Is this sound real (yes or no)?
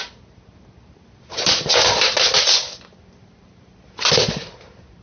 yes